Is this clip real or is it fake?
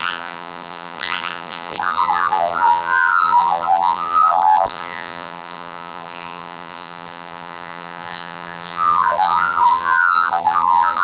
fake